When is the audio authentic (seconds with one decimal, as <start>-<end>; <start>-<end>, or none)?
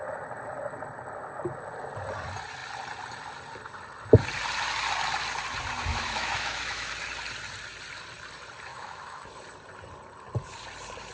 0.0-5.9; 6.9-8.7; 9.3-11.1